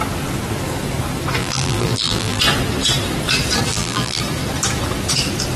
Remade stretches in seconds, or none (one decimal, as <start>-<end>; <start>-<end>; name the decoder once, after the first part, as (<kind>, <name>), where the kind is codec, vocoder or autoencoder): 1.4-2.4 (vocoder, BigVGAN v2); 3.7-4.2